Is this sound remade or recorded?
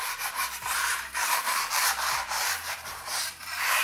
remade